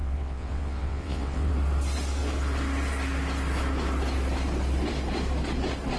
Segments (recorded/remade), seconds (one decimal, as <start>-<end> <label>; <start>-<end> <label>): 0.0-1.5 remade; 1.5-6.0 recorded